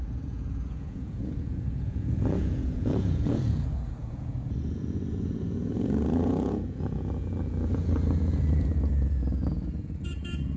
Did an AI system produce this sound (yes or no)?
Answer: yes